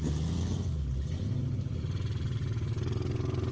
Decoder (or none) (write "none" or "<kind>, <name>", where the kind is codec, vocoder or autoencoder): none